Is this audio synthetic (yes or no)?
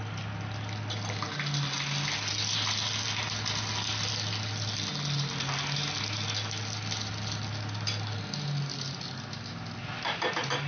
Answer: no